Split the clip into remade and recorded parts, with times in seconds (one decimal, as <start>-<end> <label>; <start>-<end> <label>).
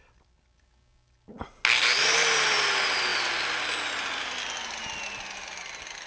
0.0-6.1 recorded